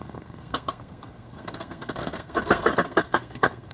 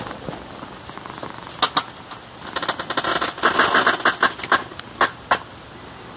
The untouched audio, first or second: second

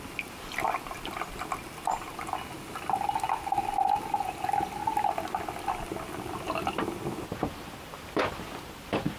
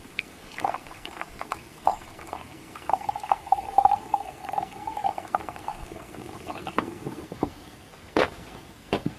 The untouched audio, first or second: first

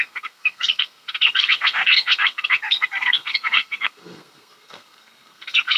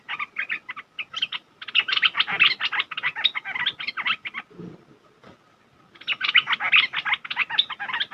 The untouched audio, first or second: second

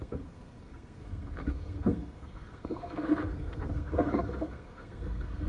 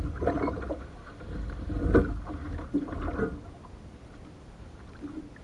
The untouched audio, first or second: second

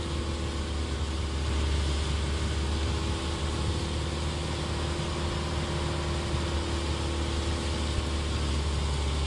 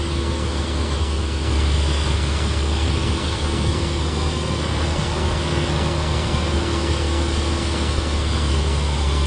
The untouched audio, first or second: first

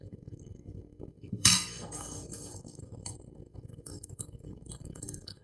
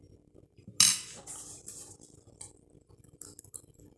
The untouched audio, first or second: second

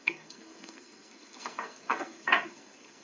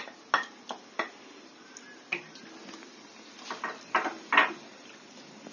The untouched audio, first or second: second